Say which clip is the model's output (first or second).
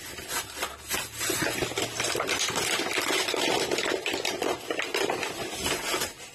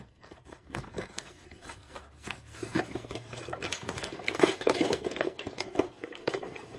second